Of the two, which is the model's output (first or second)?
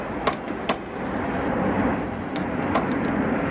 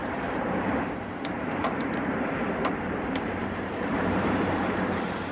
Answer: second